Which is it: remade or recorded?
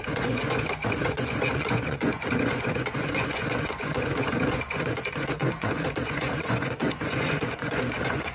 remade